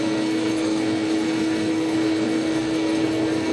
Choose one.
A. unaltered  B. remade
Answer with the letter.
B